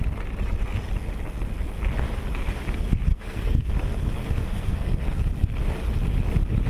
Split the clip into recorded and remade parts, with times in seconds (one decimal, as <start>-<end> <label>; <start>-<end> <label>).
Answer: 0.0-3.1 recorded; 3.1-3.7 remade; 3.7-4.2 recorded; 4.2-5.2 remade; 5.2-6.7 recorded